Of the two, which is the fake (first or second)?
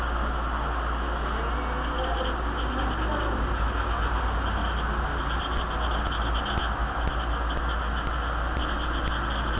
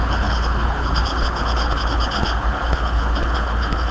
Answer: second